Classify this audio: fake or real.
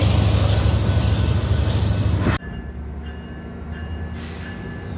real